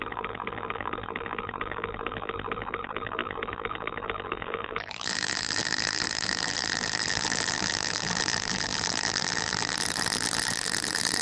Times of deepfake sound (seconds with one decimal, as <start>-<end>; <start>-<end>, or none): 0.0-11.2